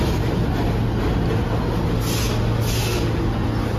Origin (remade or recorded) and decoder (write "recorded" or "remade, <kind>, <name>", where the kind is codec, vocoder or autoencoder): recorded